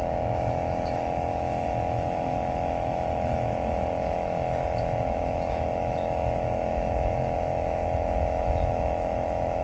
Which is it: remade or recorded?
remade